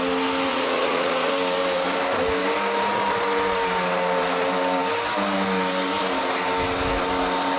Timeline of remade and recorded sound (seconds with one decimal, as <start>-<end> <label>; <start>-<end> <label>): 0.0-0.5 recorded; 0.5-1.3 remade; 1.3-7.6 recorded